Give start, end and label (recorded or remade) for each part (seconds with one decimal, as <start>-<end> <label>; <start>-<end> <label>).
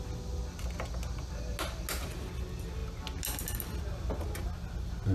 0.0-5.1 recorded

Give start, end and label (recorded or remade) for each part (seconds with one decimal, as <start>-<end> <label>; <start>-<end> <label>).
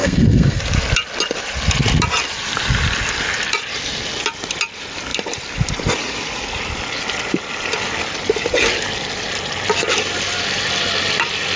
0.0-0.6 remade; 0.6-11.6 recorded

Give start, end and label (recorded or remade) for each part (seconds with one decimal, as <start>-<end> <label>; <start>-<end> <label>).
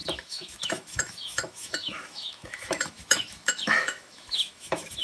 0.0-5.0 remade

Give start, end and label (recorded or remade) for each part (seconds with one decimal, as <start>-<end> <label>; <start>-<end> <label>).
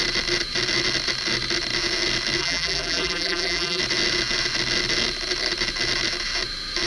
0.0-2.4 recorded; 2.4-3.8 remade; 3.8-6.9 recorded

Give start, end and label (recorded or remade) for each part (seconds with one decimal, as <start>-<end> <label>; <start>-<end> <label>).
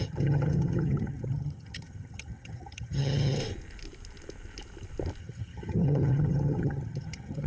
0.0-3.4 remade; 3.4-5.2 recorded; 5.2-7.5 remade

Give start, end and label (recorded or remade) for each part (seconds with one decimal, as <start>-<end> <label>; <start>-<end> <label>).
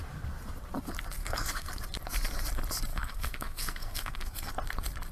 0.0-1.2 recorded; 1.2-1.7 remade; 1.7-2.9 recorded; 2.9-4.5 remade; 4.5-5.1 recorded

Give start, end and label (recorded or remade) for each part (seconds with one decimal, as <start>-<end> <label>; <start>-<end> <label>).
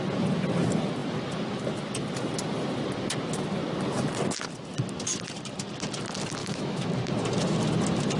0.0-6.4 recorded; 6.4-6.9 remade; 6.9-8.2 recorded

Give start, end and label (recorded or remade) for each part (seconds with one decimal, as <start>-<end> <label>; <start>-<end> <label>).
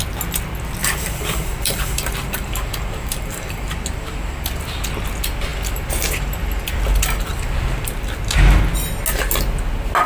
0.0-0.8 recorded; 0.8-3.7 remade; 3.7-10.1 recorded